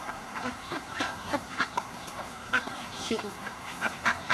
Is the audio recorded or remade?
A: remade